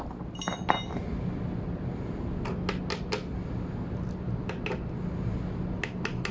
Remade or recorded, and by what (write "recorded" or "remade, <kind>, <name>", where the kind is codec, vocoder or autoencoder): recorded